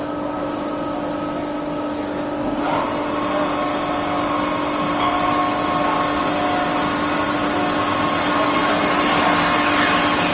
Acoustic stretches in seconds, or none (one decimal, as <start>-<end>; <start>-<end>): 0.0-10.3